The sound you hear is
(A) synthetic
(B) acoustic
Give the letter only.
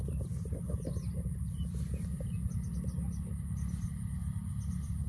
B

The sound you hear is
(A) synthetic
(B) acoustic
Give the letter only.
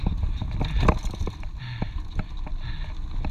B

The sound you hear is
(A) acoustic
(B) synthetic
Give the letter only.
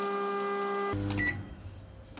A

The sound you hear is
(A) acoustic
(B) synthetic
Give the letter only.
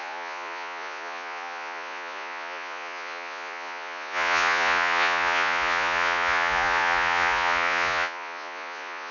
B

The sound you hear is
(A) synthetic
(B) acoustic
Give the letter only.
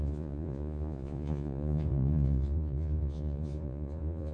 A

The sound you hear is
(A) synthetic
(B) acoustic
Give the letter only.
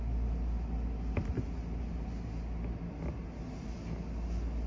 B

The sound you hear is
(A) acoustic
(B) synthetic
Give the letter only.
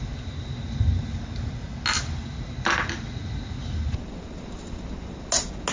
A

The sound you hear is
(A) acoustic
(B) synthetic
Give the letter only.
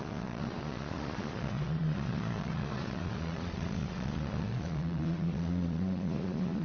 B